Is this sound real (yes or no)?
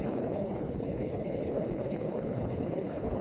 no